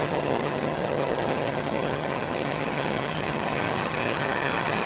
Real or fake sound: fake